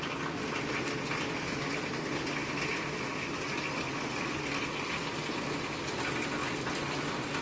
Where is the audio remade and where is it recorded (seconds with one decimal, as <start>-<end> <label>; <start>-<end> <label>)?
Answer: 0.0-7.4 recorded